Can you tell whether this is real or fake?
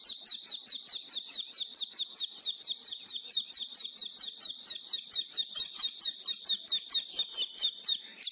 real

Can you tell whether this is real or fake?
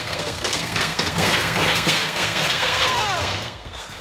fake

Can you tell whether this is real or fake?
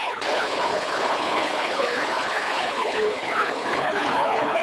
fake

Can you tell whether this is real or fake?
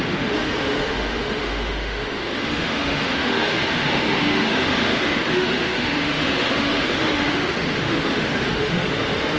fake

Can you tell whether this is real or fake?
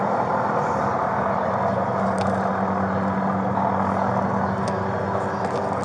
real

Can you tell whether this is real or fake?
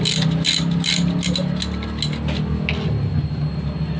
real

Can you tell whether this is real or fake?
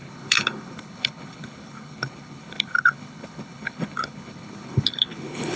fake